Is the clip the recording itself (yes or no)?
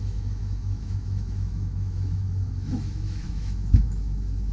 no